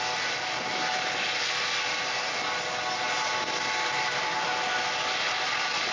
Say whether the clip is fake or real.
real